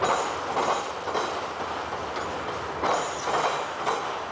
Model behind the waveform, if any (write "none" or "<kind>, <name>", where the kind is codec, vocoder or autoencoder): none